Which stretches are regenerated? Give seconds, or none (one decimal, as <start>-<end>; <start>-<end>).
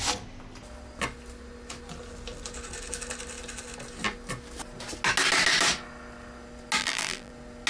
6.8-7.3